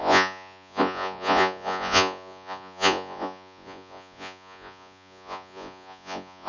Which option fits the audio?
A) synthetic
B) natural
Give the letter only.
A